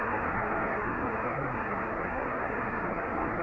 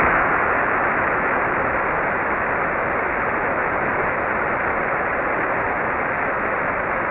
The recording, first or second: second